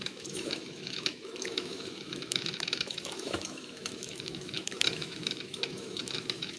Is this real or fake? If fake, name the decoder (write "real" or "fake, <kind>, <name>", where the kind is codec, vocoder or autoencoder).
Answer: fake, autoencoder, DAC-VAE